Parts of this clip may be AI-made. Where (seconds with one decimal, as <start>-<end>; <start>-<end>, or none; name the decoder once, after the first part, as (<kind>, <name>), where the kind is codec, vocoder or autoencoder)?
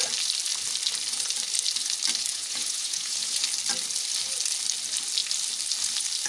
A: 2.3-3.4 (vocoder, Vocos)